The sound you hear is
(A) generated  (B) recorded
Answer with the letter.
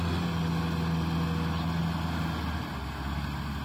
B